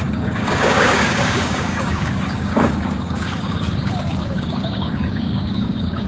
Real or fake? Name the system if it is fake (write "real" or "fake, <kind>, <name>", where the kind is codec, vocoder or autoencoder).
fake, codec, DAC